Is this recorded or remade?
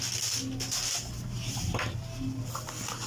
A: recorded